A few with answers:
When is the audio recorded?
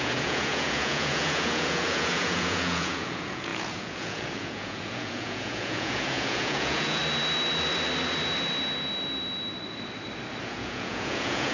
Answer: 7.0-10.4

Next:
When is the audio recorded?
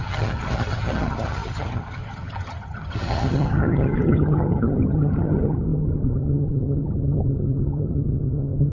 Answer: none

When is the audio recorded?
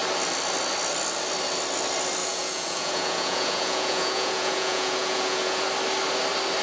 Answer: 0.0-2.2; 5.6-6.6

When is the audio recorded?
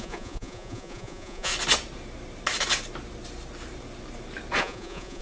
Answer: 1.5-4.6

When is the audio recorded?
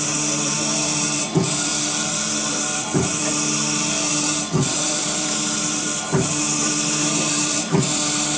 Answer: 1.7-2.5; 3.2-4.1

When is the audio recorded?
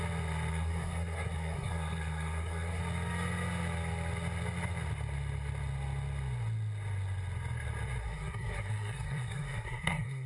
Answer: 0.0-0.5; 2.8-8.0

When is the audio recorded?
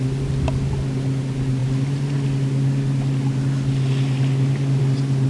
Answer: 0.0-5.3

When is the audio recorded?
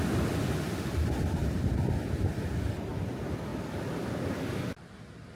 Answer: 0.0-5.4